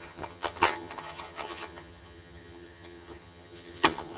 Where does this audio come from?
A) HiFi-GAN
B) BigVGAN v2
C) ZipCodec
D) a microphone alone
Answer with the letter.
A